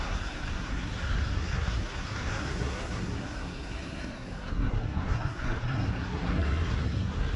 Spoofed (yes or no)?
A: yes